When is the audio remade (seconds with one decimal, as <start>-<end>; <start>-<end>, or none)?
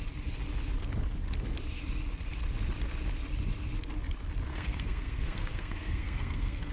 4.5-6.7